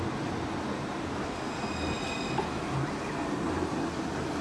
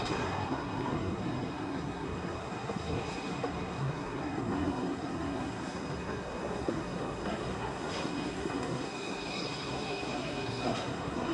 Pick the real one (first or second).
first